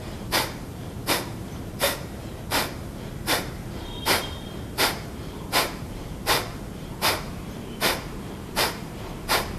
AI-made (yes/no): yes